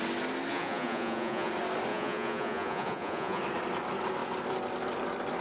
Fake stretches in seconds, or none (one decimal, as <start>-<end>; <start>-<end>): 0.5-1.5; 1.9-3.4